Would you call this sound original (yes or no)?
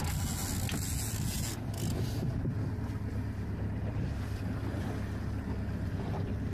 yes